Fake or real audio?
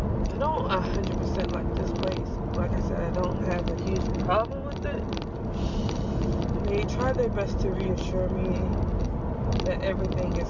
real